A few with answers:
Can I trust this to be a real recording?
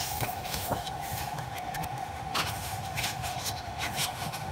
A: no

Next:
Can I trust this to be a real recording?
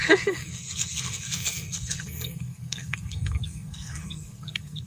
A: no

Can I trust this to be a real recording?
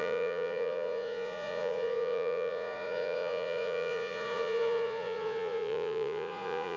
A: no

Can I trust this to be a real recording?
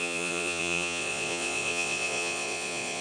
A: no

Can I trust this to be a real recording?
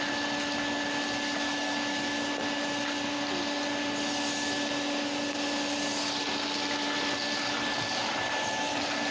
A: yes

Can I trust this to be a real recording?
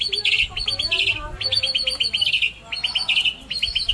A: yes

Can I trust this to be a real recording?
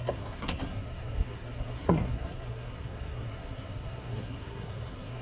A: no